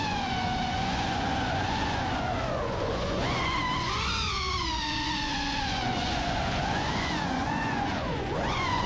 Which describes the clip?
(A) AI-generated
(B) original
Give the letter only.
A